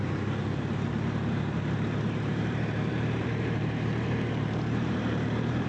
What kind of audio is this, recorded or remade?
remade